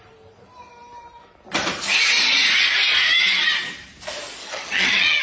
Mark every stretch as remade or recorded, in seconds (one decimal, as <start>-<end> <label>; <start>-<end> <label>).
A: 0.0-4.4 recorded; 4.4-5.2 remade